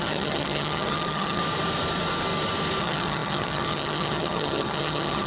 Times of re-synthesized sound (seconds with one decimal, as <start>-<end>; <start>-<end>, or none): 0.0-1.4; 2.8-5.3